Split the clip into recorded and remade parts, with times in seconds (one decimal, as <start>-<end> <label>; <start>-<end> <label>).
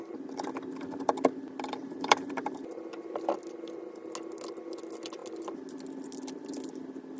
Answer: 0.0-1.8 recorded; 1.8-2.6 remade; 2.6-7.2 recorded